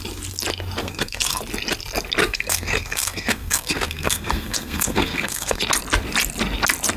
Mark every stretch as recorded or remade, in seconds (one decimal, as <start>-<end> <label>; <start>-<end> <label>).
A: 0.0-0.8 recorded; 0.8-1.4 remade; 1.4-2.2 recorded; 2.2-5.6 remade; 5.6-7.0 recorded